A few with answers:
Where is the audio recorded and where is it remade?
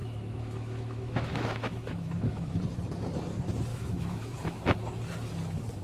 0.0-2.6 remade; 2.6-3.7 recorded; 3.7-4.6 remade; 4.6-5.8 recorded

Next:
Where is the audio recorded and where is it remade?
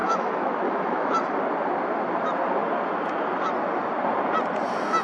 0.0-1.1 remade; 1.1-5.0 recorded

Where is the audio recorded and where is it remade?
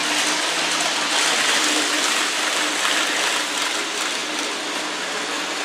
0.0-5.6 recorded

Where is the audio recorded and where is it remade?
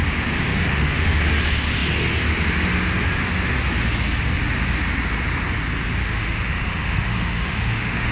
0.0-0.5 recorded; 0.5-1.2 remade; 1.2-6.0 recorded; 6.0-8.1 remade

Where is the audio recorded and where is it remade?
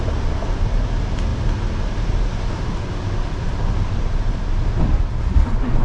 0.0-5.8 recorded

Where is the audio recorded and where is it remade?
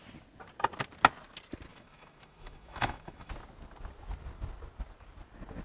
0.0-1.7 recorded; 1.7-3.3 remade; 3.3-5.6 recorded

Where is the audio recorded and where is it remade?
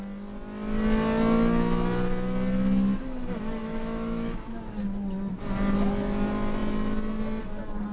0.0-3.6 recorded; 3.6-4.7 remade; 4.7-7.9 recorded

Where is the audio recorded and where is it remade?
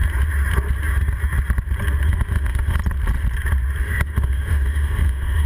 0.0-2.1 recorded; 2.1-2.8 remade; 2.8-3.8 recorded; 3.8-5.5 remade